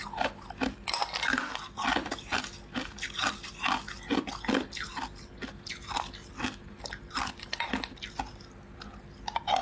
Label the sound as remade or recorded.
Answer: recorded